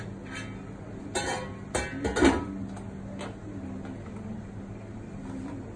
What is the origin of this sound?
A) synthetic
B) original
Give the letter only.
B